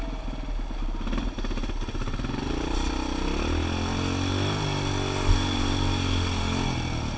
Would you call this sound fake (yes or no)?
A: no